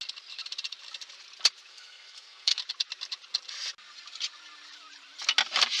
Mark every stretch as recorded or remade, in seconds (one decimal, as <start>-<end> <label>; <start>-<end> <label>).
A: 0.0-1.7 recorded; 1.7-2.6 remade; 2.6-5.8 recorded